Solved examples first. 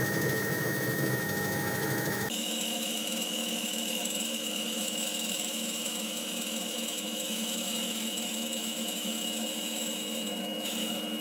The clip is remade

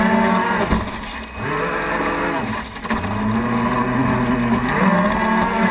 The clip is recorded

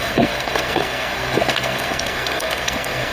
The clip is remade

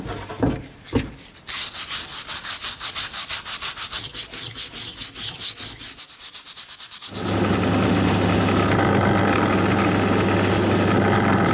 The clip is recorded